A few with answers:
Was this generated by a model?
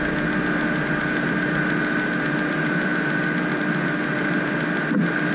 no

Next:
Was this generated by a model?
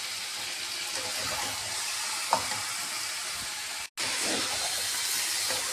no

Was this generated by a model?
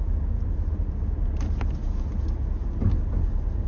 no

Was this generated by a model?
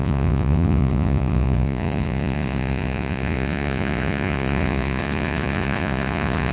yes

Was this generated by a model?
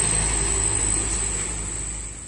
no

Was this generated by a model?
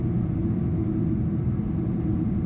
no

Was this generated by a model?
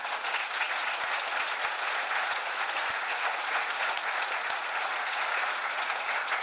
yes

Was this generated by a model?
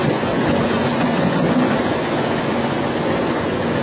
yes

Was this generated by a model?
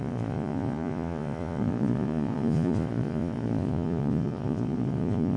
yes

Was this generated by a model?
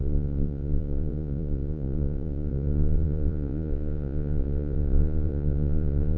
yes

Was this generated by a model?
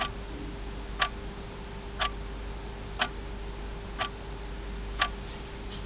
no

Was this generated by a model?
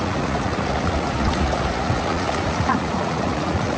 yes